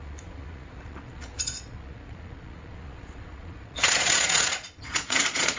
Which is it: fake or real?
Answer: fake